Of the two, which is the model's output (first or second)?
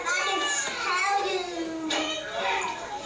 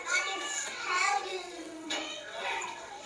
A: second